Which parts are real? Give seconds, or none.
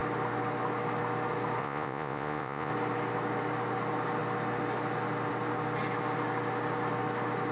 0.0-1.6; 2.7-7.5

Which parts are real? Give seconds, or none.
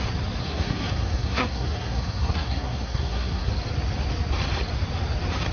0.0-0.4; 3.5-5.5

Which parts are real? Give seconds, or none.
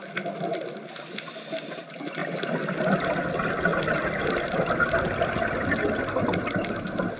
0.0-7.2